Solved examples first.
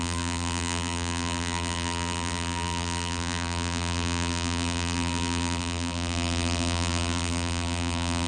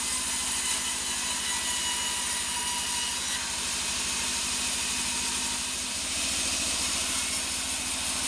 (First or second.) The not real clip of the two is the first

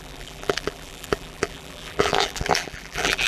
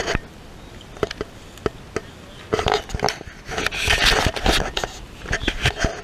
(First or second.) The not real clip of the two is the first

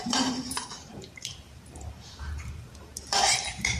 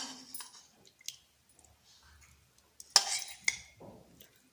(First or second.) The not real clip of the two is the first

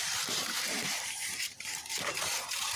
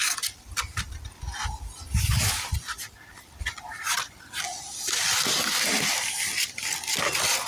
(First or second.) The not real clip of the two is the first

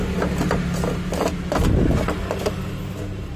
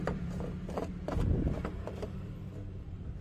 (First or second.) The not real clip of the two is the second